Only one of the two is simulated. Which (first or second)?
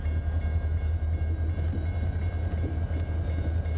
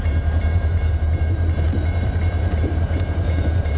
second